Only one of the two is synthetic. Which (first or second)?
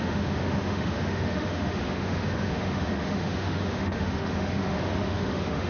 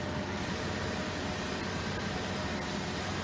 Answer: first